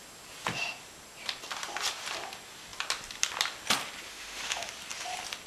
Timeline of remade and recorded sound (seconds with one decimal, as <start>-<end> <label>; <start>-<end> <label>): 0.0-4.1 recorded; 4.1-4.7 remade; 4.7-5.5 recorded